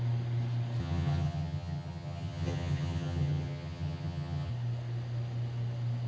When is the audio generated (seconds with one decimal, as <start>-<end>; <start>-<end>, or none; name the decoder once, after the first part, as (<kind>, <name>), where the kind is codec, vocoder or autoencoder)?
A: 0.8-4.5 (vocoder, HiFi-GAN)